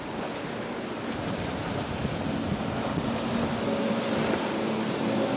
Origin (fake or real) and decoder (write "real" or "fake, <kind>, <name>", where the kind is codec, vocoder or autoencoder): real